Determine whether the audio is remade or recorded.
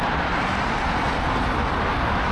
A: recorded